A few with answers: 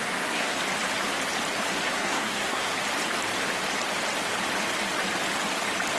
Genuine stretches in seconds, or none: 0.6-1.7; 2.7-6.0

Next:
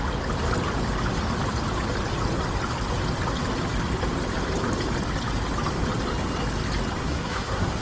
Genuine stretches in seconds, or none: 0.0-7.0

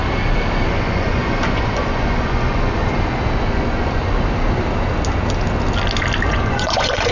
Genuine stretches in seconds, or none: 0.0-0.7; 2.8-3.5; 4.0-6.3

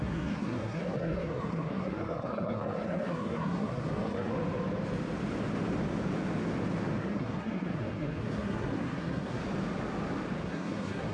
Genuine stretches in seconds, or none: 4.3-7.0; 9.4-10.4

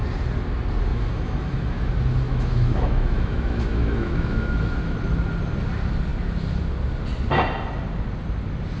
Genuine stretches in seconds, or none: 0.0-0.9; 1.9-2.3; 4.7-8.8

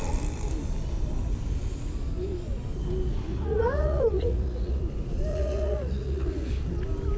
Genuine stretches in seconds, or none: 0.0-3.3; 4.8-5.3; 6.5-7.2